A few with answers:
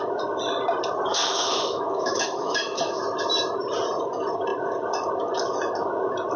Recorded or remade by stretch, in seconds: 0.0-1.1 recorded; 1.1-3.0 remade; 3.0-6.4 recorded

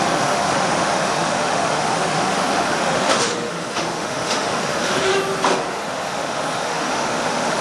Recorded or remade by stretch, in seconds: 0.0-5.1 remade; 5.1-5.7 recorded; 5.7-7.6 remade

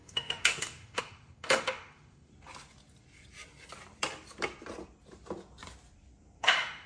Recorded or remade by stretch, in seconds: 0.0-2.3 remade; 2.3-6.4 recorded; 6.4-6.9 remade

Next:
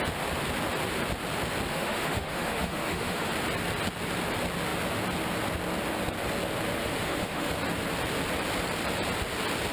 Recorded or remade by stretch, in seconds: 0.0-1.7 recorded; 1.7-3.3 remade; 3.3-6.8 recorded; 6.8-7.5 remade; 7.5-9.7 recorded

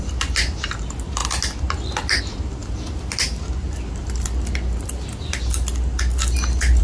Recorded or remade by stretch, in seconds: 0.0-6.8 recorded

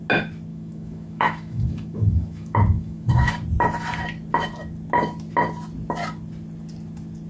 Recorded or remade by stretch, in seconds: 0.0-0.5 recorded; 0.5-3.3 remade; 3.3-7.3 recorded